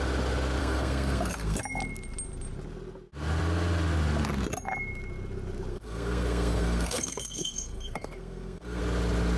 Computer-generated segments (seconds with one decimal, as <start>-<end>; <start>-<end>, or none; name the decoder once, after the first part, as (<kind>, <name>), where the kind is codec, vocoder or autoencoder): 0.6-1.6 (codec, SNAC); 5.7-8.8